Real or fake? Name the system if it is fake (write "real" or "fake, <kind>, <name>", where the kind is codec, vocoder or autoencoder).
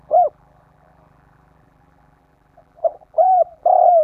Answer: fake, vocoder, BigVGAN v2